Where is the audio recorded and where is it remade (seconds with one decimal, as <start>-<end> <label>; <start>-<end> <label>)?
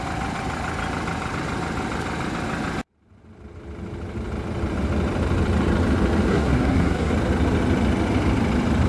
0.0-6.3 recorded; 6.3-7.1 remade; 7.1-8.9 recorded